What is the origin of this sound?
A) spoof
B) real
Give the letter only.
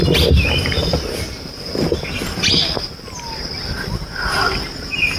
B